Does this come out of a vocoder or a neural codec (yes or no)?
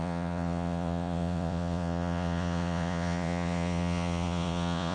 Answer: yes